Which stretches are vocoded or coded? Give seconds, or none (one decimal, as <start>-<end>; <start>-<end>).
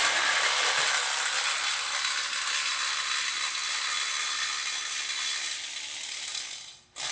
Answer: none